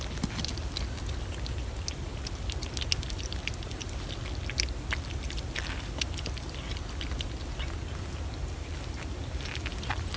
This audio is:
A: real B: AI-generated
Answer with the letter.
A